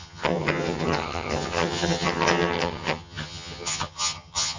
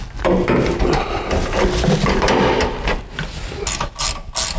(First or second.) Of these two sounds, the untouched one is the second